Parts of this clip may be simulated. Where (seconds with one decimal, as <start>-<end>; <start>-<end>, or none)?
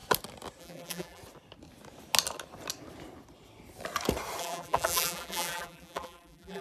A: 0.6-1.2; 4.4-6.6